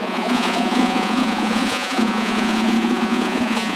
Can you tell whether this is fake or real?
fake